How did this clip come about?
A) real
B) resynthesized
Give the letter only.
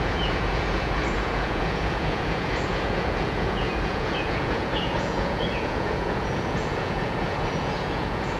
B